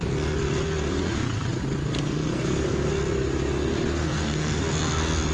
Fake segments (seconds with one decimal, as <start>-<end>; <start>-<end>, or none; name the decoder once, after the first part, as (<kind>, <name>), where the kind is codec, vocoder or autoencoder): 1.8-2.9 (codec, SNAC); 4.0-4.6